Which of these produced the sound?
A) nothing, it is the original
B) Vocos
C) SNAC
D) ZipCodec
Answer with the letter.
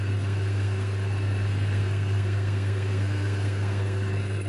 C